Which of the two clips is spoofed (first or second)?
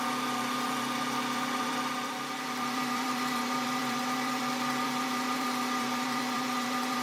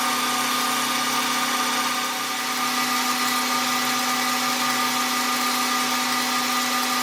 first